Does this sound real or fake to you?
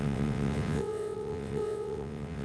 fake